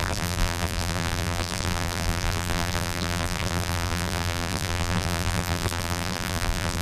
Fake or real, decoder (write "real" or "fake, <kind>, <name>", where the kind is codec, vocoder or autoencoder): fake, vocoder, BigVGAN v2